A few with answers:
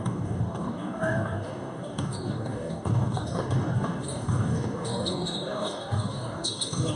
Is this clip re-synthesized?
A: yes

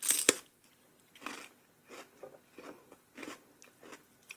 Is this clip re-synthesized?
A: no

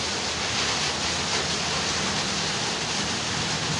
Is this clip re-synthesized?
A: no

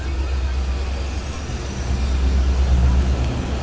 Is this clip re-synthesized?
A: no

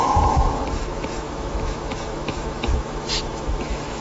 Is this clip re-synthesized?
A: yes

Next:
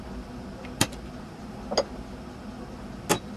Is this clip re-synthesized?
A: no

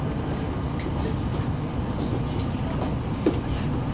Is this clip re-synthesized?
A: no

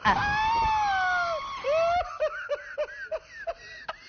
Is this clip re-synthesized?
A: no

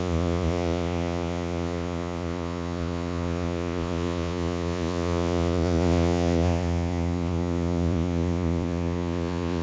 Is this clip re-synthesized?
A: yes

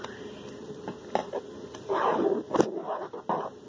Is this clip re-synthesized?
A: no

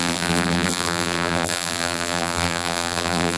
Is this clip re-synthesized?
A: yes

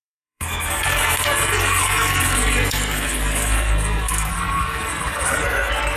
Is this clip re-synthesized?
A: yes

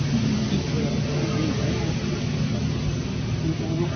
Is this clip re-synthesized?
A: no